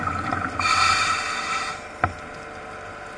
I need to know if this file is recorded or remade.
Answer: remade